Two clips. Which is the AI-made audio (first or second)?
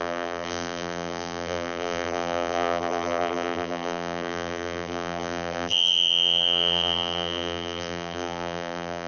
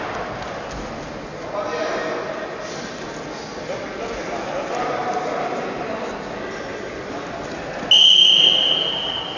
first